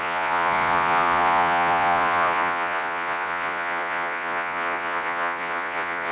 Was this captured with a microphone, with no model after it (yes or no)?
no